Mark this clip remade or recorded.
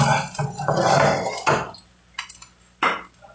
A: recorded